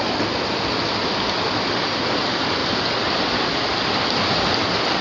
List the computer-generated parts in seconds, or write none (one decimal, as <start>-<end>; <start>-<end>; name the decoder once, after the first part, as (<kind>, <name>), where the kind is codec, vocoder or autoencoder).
none